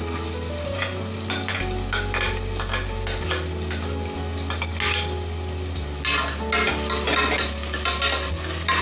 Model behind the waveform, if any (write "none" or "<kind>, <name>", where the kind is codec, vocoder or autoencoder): none